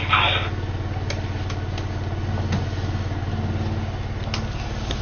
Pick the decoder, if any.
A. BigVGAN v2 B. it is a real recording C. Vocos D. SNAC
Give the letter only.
B